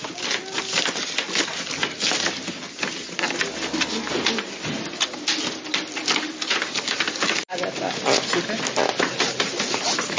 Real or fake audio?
real